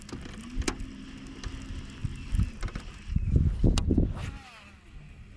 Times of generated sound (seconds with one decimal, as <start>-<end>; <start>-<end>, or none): none